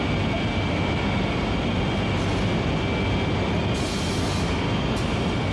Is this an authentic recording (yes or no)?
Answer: yes